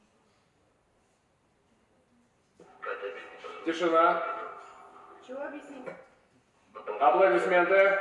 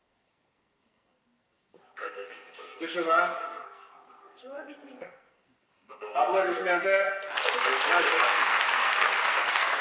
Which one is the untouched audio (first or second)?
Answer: first